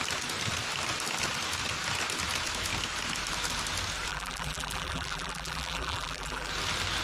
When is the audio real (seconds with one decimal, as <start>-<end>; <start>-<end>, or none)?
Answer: 0.0-4.1; 6.5-7.0